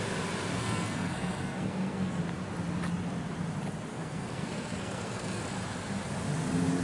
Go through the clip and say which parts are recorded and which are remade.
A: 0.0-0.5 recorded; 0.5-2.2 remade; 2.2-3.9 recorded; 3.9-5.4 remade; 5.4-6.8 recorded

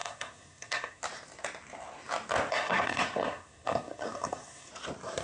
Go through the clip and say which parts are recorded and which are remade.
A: 0.0-1.0 remade; 1.0-2.5 recorded; 2.5-4.7 remade; 4.7-5.2 recorded

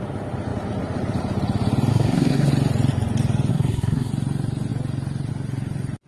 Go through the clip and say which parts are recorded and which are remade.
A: 0.0-1.9 recorded; 1.9-2.5 remade; 2.5-3.5 recorded; 3.5-4.1 remade; 4.1-6.1 recorded

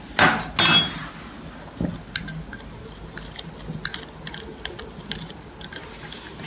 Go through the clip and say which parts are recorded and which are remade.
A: 0.0-6.5 recorded

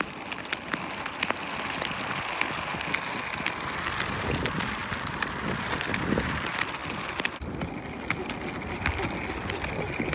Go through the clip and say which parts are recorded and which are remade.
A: 0.0-10.1 recorded